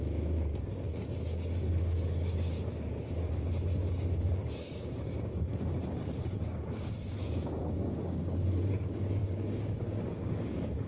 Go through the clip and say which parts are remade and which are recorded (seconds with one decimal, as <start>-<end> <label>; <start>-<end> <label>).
0.0-10.9 remade